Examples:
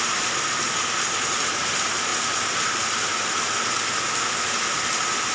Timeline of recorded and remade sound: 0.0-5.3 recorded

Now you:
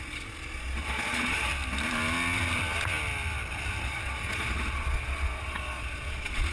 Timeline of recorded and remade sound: 0.0-1.5 remade; 1.5-3.8 recorded; 3.8-6.5 remade

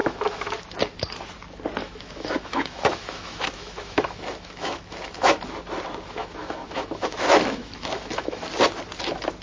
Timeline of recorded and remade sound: 0.0-0.6 remade; 0.6-1.8 recorded; 1.8-5.4 remade; 5.4-6.2 recorded; 6.2-8.5 remade; 8.5-9.4 recorded

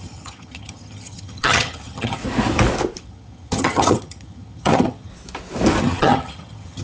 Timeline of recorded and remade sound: 0.0-2.2 remade; 2.2-3.0 recorded; 3.0-5.1 remade; 5.1-5.8 recorded; 5.8-6.8 remade